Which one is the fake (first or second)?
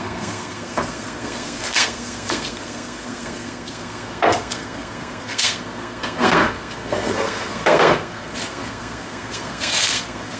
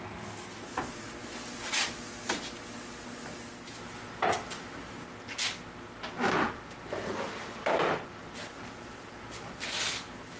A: first